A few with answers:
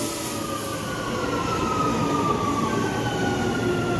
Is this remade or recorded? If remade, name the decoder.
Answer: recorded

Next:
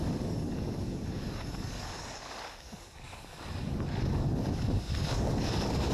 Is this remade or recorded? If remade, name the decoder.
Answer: remade, codec, DAC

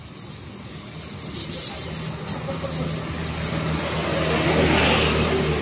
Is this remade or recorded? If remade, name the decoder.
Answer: recorded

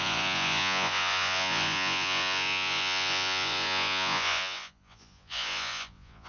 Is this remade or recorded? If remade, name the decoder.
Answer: remade, vocoder, Vocos